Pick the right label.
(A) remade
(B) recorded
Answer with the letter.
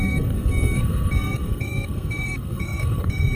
A